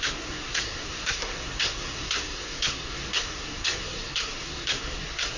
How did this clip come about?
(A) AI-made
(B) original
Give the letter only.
A